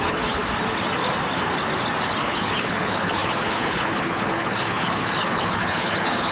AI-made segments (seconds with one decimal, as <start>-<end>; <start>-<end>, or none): 0.0-0.4; 2.2-6.3